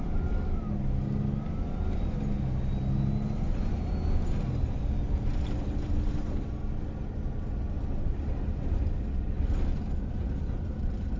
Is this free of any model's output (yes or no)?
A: yes